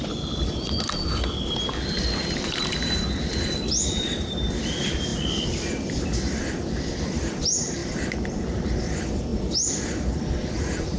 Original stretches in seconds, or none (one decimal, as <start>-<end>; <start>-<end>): 0.0-11.0